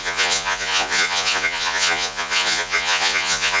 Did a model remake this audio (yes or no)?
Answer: yes